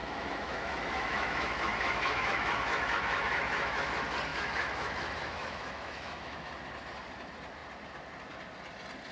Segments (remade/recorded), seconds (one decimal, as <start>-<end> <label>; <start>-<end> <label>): 0.0-3.9 remade; 3.9-4.3 recorded; 4.3-6.5 remade; 6.5-9.1 recorded